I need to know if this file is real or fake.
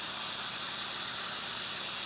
fake